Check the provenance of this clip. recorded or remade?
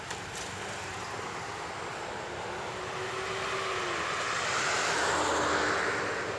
recorded